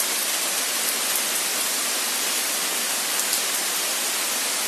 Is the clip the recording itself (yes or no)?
no